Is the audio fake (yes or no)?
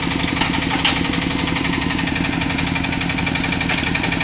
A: no